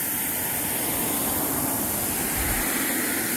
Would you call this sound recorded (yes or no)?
yes